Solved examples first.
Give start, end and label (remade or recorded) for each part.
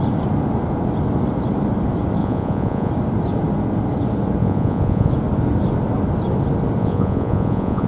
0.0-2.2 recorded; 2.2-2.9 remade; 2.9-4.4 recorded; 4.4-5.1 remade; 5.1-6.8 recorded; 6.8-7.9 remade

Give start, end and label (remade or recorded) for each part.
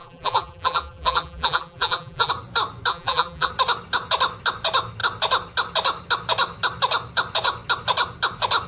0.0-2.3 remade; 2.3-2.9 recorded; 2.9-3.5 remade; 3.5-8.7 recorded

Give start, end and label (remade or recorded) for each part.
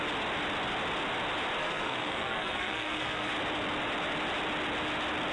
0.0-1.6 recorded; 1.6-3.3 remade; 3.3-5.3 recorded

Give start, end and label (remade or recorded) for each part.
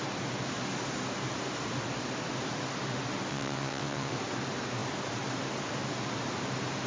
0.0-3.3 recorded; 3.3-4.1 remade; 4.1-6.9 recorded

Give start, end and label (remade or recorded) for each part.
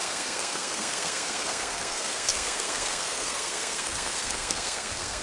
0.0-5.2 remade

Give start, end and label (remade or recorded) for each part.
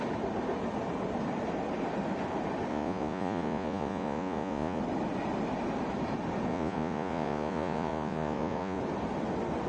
0.0-2.7 recorded; 2.7-4.8 remade; 4.8-6.5 recorded; 6.5-8.8 remade; 8.8-9.7 recorded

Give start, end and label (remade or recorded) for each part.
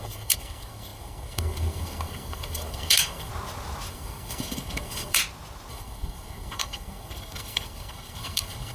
0.0-3.3 remade; 3.3-3.9 recorded; 3.9-5.2 remade; 5.2-5.7 recorded; 5.7-8.7 remade